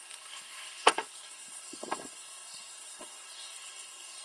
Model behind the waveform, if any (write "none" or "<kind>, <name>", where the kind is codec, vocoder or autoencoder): codec, SNAC